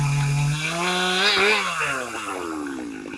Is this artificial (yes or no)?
no